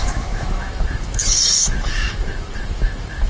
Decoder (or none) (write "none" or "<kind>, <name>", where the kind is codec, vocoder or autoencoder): autoencoder, DAC-VAE